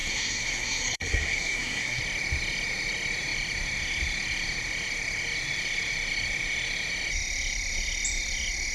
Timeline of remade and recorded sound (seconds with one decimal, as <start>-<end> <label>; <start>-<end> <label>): 0.0-2.0 remade; 2.0-8.7 recorded